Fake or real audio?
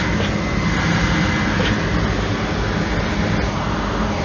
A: real